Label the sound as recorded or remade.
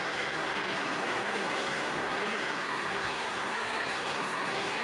remade